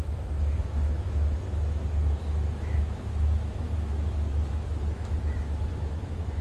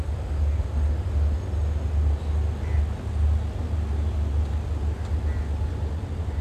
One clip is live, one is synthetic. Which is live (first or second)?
second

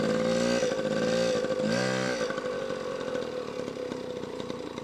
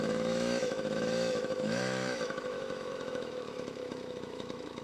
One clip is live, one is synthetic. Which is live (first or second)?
first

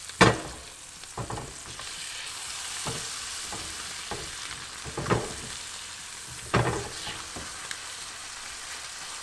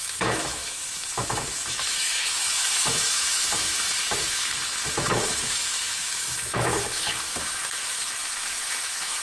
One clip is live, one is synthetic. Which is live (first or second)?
first